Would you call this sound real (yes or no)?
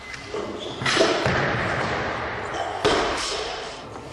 yes